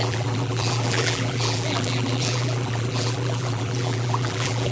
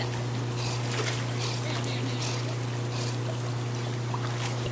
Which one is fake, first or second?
first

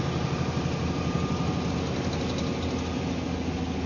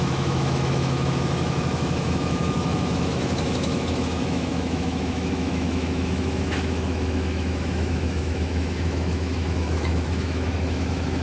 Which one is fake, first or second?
second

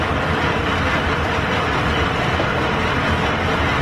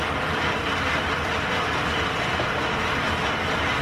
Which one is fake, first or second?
first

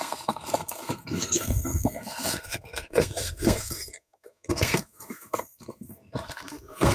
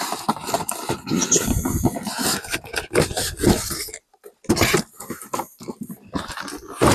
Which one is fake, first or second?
first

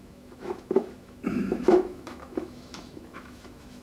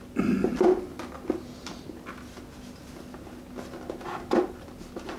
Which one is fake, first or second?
first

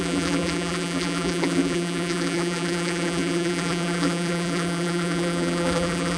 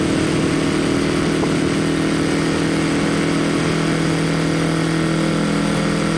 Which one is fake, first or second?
first